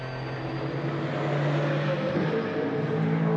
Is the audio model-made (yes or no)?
no